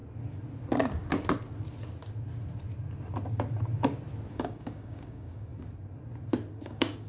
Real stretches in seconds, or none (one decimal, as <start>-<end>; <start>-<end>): 0.0-4.3; 5.5-6.5